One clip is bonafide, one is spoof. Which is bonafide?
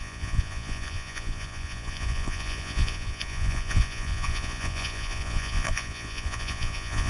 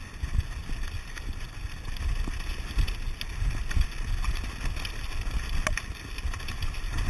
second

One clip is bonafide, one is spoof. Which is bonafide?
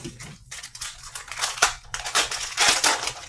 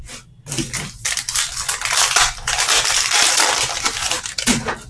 second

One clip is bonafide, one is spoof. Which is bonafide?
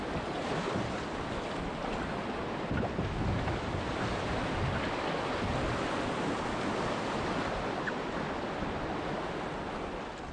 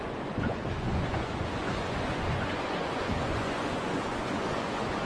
first